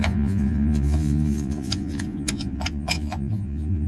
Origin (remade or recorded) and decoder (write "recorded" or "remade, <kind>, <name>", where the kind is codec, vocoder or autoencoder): remade, vocoder, Vocos